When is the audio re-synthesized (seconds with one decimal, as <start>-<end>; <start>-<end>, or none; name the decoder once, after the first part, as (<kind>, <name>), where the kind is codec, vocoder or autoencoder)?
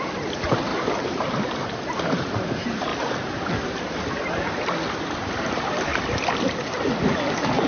0.0-2.9 (vocoder, BigVGAN v2); 3.6-5.9; 7.3-7.7